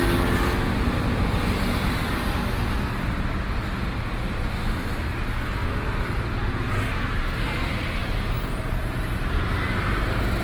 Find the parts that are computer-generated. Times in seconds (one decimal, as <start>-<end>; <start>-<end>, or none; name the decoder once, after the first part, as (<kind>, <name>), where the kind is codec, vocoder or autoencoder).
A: 6.4-7.2 (vocoder, Vocos)